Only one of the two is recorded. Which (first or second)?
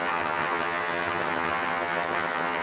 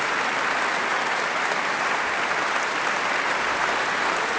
second